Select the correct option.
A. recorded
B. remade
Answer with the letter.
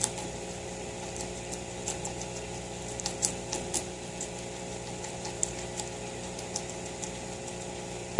A